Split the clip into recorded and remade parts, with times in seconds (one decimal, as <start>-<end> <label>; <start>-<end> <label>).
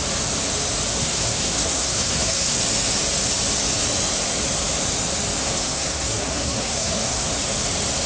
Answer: 0.0-0.9 recorded; 0.9-2.6 remade; 2.6-5.4 recorded; 5.4-7.3 remade; 7.3-8.1 recorded